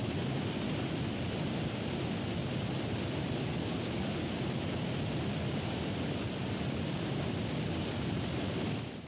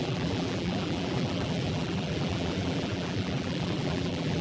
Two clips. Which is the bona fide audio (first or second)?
first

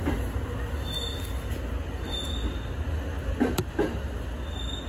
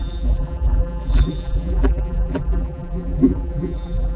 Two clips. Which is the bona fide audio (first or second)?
first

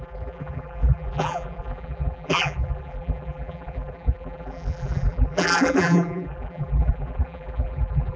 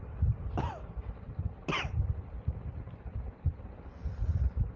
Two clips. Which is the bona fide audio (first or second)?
second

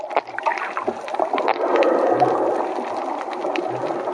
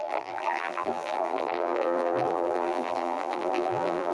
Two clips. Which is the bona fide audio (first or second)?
first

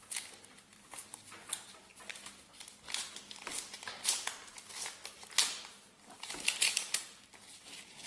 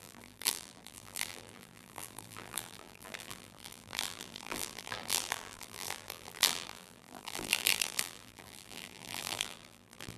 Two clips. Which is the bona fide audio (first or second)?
first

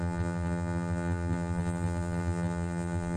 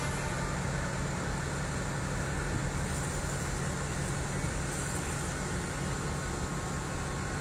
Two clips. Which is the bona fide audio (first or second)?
second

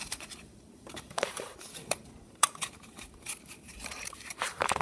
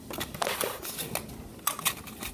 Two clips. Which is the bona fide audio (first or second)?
second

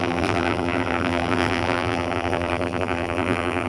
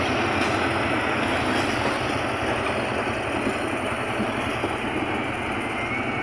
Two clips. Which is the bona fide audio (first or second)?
second